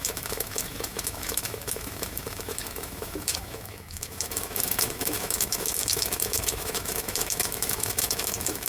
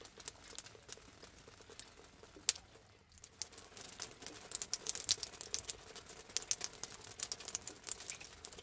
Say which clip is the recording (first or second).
second